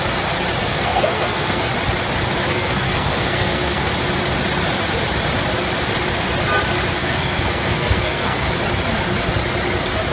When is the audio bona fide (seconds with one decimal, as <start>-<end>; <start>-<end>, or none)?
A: 0.0-0.6; 1.7-2.5; 3.9-7.0; 8.5-10.1